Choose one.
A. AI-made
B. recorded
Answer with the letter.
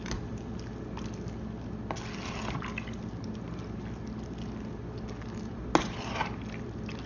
B